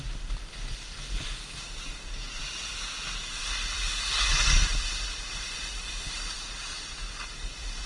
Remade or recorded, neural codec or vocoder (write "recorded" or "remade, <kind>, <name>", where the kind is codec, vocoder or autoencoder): recorded